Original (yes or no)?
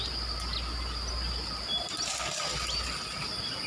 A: yes